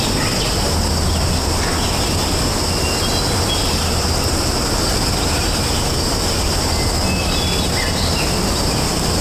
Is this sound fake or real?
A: real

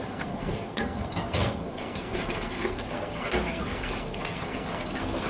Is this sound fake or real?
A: fake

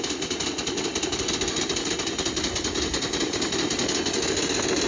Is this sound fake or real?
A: real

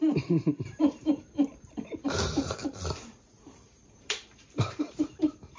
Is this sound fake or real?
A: fake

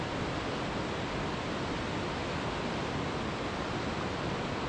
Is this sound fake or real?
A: real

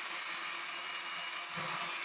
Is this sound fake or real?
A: real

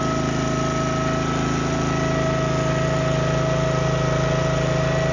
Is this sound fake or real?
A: real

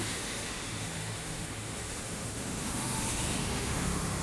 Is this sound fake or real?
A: fake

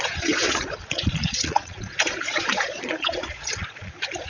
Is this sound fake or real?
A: fake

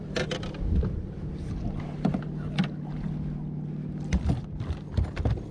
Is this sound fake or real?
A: real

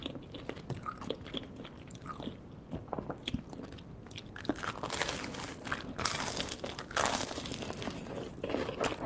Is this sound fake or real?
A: real